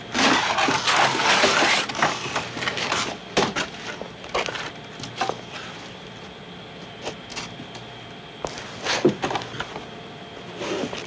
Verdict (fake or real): real